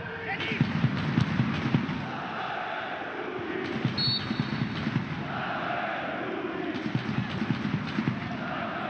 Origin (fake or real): real